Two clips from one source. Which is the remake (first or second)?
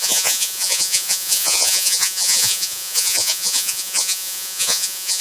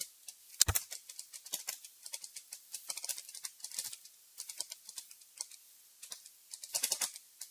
first